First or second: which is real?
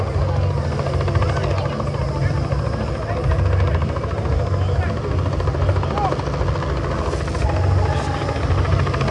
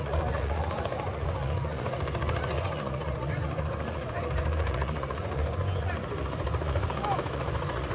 first